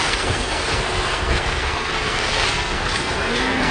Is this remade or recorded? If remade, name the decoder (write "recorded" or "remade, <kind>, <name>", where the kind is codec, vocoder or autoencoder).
remade, codec, SNAC